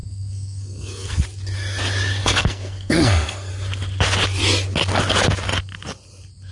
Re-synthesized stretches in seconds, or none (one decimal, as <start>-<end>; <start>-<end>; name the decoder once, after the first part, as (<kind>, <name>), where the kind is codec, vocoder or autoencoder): 0.0-1.2 (codec, SNAC); 2.2-3.5